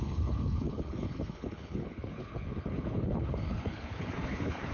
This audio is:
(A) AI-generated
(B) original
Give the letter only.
A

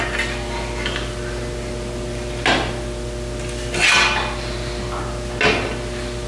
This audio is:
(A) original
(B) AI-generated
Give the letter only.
A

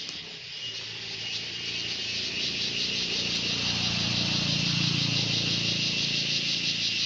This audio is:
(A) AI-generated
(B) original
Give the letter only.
B